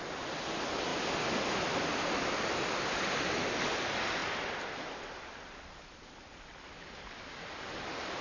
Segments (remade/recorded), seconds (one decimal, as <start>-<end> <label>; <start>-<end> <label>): 0.0-8.2 recorded